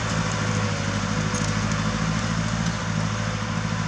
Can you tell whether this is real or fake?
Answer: real